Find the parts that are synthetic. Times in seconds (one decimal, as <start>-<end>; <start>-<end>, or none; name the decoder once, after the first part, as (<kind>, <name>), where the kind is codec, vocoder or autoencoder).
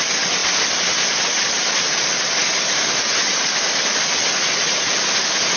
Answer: none